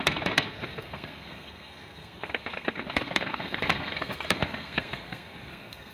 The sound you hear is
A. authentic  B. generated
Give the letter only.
B